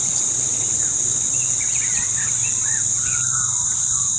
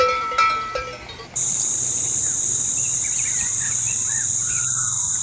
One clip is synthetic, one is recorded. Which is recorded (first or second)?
first